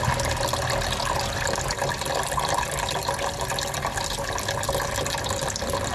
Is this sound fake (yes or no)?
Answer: no